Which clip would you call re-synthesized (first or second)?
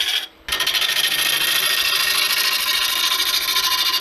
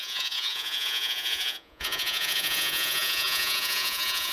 second